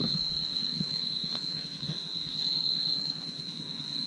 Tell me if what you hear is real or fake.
fake